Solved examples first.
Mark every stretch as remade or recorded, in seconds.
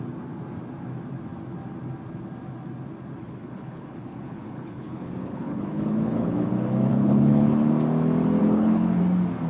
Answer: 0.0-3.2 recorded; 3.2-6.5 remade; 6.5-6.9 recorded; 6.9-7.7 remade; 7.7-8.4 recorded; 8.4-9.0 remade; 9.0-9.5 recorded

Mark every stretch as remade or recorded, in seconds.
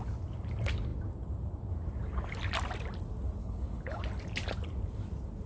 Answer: 0.0-3.4 recorded; 3.4-4.0 remade; 4.0-5.5 recorded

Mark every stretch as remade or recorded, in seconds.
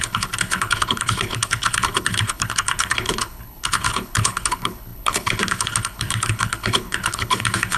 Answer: 0.0-7.8 remade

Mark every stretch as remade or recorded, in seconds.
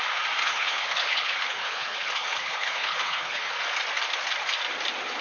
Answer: 0.0-0.4 recorded; 0.4-3.5 remade; 3.5-5.2 recorded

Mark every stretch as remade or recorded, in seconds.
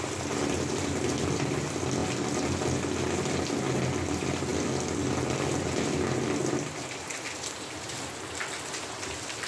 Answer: 0.0-9.5 recorded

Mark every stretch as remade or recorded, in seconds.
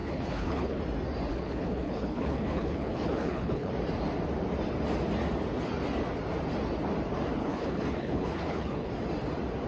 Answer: 0.0-0.8 remade; 0.8-1.3 recorded; 1.3-3.7 remade; 3.7-7.4 recorded; 7.4-8.9 remade; 8.9-9.7 recorded